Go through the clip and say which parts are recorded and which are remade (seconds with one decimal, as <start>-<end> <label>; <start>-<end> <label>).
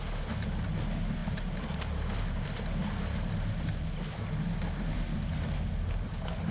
0.0-6.5 recorded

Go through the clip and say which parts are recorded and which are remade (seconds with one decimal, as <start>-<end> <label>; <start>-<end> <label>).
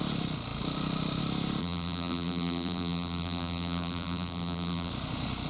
0.0-1.6 recorded; 1.6-4.9 remade; 4.9-5.5 recorded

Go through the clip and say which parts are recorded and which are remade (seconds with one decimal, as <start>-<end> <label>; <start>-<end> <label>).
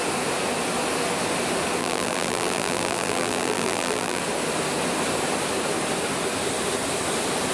0.0-1.8 recorded; 1.8-4.2 remade; 4.2-7.5 recorded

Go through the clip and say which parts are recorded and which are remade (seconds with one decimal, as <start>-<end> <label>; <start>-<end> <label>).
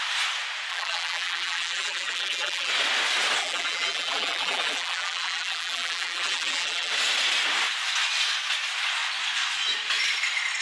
0.0-0.7 recorded; 0.7-2.7 remade; 2.7-3.4 recorded; 3.4-6.9 remade; 6.9-10.6 recorded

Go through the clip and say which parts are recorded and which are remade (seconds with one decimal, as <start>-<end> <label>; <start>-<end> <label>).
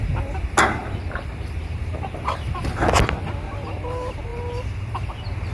0.0-0.8 recorded; 0.8-2.8 remade; 2.8-4.3 recorded; 4.3-5.1 remade; 5.1-5.5 recorded